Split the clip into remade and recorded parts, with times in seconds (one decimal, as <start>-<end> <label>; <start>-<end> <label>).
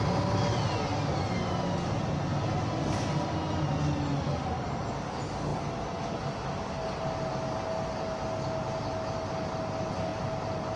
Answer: 0.0-10.1 recorded; 10.1-10.8 remade